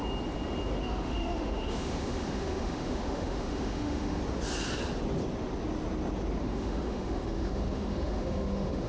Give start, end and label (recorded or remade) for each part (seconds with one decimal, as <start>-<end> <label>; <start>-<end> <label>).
0.0-0.8 recorded; 0.8-4.2 remade; 4.2-6.4 recorded; 6.4-8.9 remade